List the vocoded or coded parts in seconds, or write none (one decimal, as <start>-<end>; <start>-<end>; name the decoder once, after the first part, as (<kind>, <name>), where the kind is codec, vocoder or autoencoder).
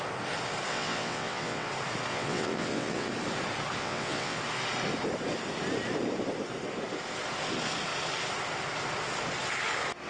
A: 0.7-1.7 (vocoder, WaveNeXt); 2.1-3.1; 3.8-4.4